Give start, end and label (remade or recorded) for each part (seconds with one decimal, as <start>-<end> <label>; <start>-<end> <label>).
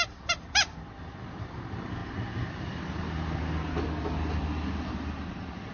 0.0-2.0 remade; 2.0-5.7 recorded